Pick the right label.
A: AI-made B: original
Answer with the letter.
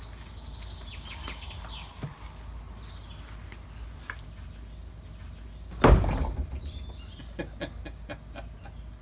B